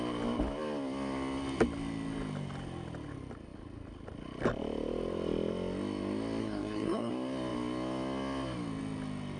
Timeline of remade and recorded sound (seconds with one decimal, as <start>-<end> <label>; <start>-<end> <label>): 0.0-6.4 recorded; 6.4-7.1 remade; 7.1-9.4 recorded

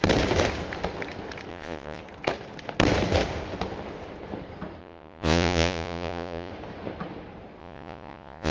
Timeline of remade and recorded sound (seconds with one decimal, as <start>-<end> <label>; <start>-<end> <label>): 0.0-1.5 recorded; 1.5-2.0 remade; 2.0-4.8 recorded; 4.8-6.5 remade; 6.5-7.6 recorded; 7.6-8.5 remade

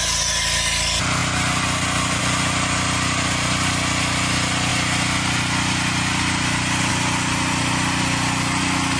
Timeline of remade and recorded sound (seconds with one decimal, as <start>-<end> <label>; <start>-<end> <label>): 0.0-9.0 recorded

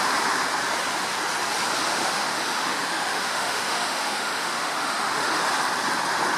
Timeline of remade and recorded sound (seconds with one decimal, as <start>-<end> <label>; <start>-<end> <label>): 0.0-1.8 recorded; 1.8-5.4 remade; 5.4-6.4 recorded

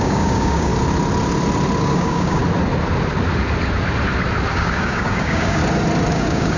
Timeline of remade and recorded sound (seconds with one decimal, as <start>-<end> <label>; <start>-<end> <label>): 0.0-0.7 remade; 0.7-1.8 recorded; 1.8-2.4 remade; 2.4-4.5 recorded; 4.5-5.6 remade; 5.6-6.1 recorded; 6.1-6.6 remade

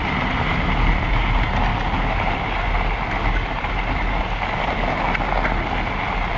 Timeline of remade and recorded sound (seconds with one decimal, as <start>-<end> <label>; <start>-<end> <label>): 0.0-6.4 recorded